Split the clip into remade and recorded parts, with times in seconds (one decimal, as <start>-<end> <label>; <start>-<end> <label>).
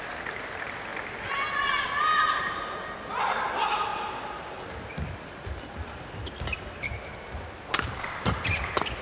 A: 0.0-9.0 recorded